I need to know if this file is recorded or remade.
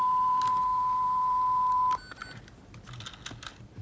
recorded